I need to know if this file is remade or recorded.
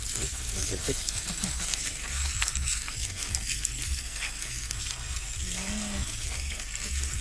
remade